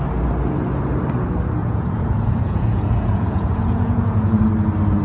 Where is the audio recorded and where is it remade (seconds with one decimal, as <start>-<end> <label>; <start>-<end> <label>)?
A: 0.0-1.6 recorded; 1.6-4.4 remade; 4.4-5.0 recorded